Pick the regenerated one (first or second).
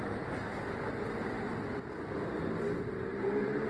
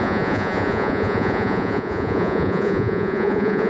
second